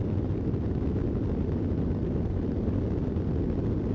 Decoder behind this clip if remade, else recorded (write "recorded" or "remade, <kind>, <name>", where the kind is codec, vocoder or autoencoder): recorded